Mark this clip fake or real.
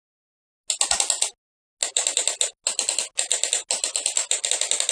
real